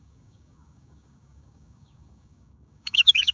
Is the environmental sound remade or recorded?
remade